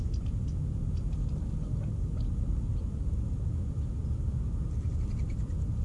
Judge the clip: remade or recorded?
recorded